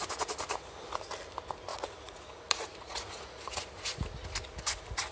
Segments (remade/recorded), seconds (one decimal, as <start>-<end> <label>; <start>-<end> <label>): 0.0-1.7 recorded; 1.7-3.4 remade; 3.4-5.1 recorded